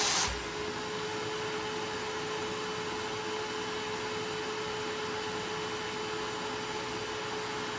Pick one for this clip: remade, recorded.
recorded